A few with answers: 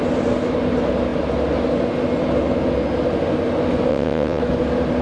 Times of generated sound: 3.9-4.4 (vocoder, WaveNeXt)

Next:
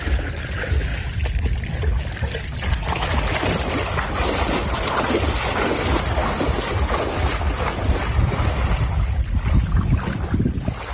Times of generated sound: none

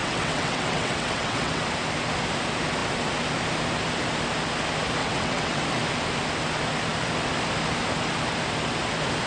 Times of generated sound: 0.0-1.6 (vocoder, WaveNeXt); 5.0-5.6

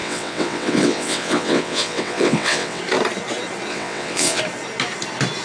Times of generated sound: 0.0-2.8 (vocoder, WaveNeXt); 3.7-4.4

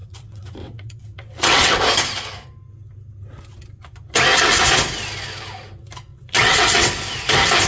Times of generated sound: 0.0-1.8 (vocoder, WaveNeXt); 6.1-6.9

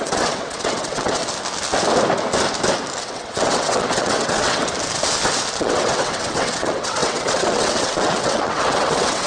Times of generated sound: 0.0-1.2 (vocoder, WaveNeXt); 3.0-4.6; 5.6-9.3

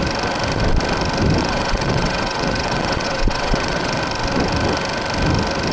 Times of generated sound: 1.4-4.0 (vocoder, WaveNeXt)